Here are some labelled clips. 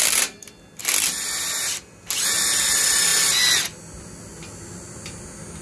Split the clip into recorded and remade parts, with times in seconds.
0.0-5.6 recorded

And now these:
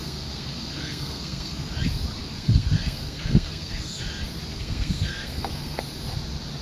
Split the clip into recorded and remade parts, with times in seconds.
0.0-1.7 remade; 1.7-2.2 recorded; 2.2-4.0 remade; 4.0-4.5 recorded; 4.5-5.8 remade; 5.8-6.6 recorded

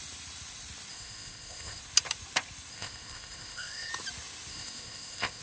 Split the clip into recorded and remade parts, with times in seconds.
0.0-0.9 recorded; 0.9-1.8 remade; 1.8-2.7 recorded; 2.7-3.9 remade; 3.9-4.5 recorded; 4.5-5.4 remade

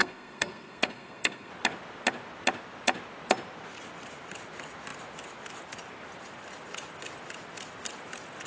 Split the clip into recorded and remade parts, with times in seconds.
0.0-1.5 remade; 1.5-8.5 recorded

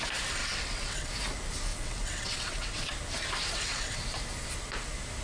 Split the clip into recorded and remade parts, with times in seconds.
0.0-0.4 recorded; 0.4-1.1 remade; 1.1-1.7 recorded; 1.7-2.9 remade; 2.9-3.4 recorded; 3.4-4.0 remade; 4.0-5.2 recorded

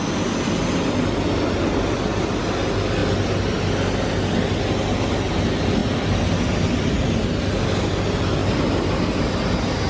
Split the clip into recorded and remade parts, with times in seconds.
0.0-9.9 recorded

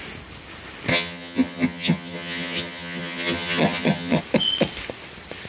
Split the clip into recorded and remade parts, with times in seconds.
0.0-0.9 recorded; 0.9-4.2 remade; 4.2-5.5 recorded

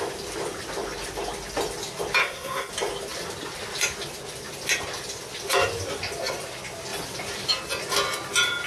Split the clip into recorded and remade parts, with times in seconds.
0.0-2.2 recorded; 2.2-2.7 remade; 2.7-8.7 recorded